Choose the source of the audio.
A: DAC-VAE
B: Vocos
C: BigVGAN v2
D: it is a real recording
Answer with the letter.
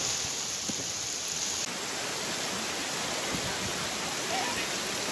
D